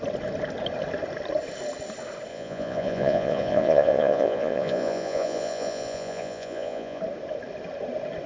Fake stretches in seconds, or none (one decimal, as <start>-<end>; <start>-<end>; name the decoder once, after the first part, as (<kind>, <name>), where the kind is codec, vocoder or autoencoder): 2.3-7.0 (vocoder, Vocos)